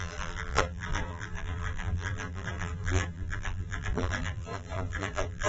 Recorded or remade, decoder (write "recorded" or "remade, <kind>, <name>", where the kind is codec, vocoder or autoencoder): remade, vocoder, BigVGAN v2